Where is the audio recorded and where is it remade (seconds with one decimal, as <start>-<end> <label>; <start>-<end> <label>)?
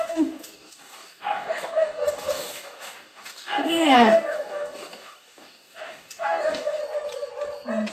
0.0-6.8 remade; 6.8-7.9 recorded